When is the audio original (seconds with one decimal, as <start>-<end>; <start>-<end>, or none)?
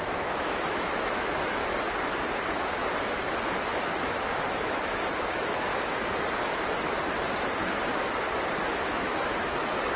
1.6-4.5; 5.7-8.9